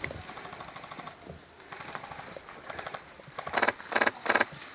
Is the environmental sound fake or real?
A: real